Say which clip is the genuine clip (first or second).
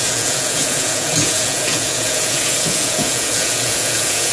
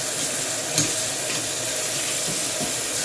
second